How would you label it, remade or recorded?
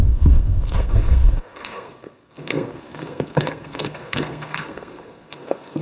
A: remade